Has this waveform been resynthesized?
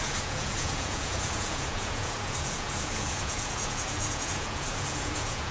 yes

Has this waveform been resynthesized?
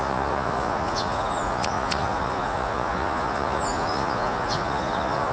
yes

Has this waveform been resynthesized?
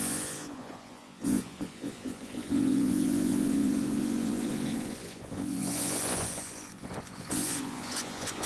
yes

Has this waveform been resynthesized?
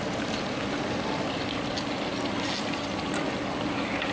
no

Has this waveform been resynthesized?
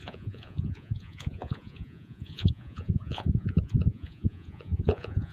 yes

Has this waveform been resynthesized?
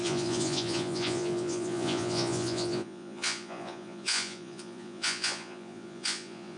yes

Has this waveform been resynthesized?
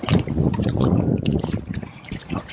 yes